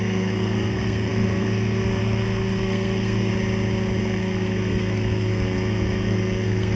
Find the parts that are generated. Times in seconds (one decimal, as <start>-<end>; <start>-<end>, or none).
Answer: 0.0-3.3; 4.0-6.8